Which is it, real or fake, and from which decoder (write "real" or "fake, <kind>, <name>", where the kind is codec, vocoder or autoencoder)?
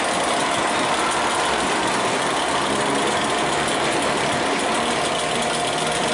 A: real